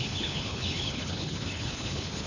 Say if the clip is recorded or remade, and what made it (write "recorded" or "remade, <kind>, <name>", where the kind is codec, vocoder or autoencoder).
remade, codec, HILCodec